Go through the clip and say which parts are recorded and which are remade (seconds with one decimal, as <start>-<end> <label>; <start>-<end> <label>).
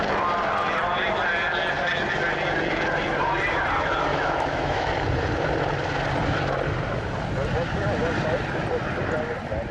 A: 0.0-4.1 recorded; 4.1-4.9 remade; 4.9-9.7 recorded